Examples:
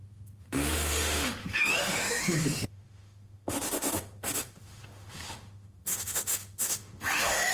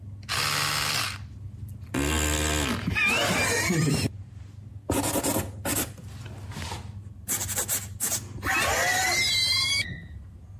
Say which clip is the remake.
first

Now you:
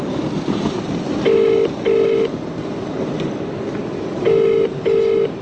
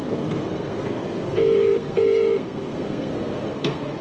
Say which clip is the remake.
second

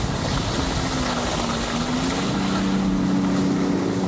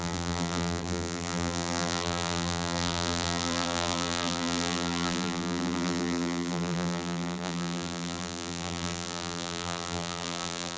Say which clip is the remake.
second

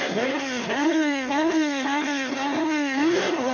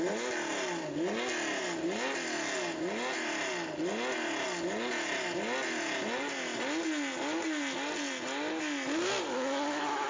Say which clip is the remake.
first